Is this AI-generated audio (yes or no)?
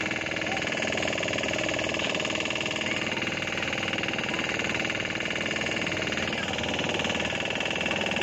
no